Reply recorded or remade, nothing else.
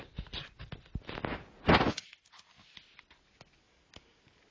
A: recorded